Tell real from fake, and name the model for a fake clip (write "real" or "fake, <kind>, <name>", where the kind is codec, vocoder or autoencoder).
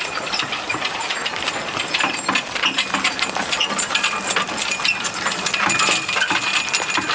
real